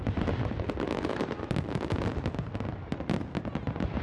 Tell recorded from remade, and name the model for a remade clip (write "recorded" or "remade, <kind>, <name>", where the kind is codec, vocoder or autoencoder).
recorded